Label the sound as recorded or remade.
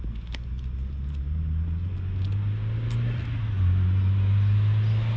recorded